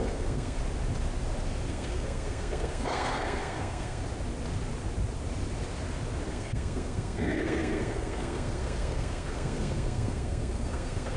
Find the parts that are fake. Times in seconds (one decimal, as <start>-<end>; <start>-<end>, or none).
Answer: 0.0-0.6; 1.7-4.0; 6.3-11.2